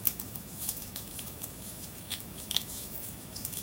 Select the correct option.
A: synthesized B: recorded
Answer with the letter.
A